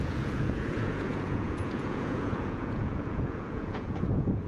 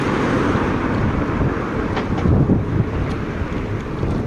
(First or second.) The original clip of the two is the second